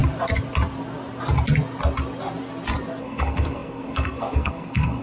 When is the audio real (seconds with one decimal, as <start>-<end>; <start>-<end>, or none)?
0.0-3.0